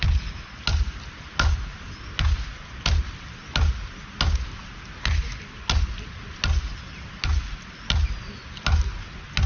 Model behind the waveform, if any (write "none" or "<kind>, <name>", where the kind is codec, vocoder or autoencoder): none